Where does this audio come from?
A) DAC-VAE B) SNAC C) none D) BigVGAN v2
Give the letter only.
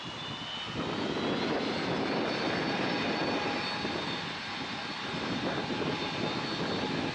C